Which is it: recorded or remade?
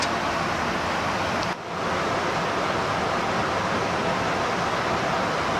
recorded